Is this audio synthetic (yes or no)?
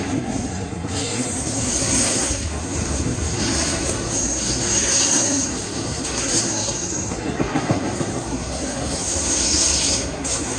yes